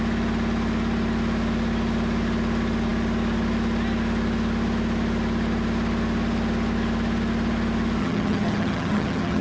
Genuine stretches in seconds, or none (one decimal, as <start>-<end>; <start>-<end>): 0.0-8.0